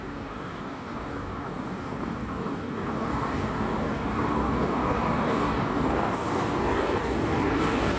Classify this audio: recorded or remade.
remade